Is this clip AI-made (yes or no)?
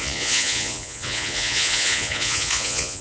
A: yes